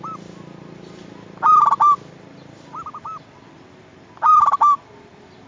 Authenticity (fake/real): real